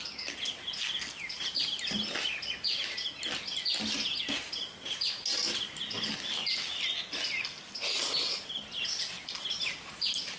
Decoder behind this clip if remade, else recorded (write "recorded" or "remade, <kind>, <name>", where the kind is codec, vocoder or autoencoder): recorded